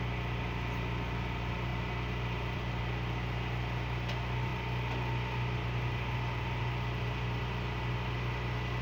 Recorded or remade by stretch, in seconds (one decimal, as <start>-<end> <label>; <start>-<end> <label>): 0.0-1.7 recorded; 1.7-2.8 remade; 2.8-8.8 recorded